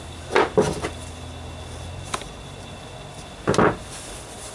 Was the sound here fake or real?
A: real